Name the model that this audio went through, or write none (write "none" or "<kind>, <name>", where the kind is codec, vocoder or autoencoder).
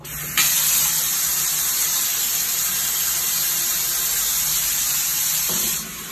none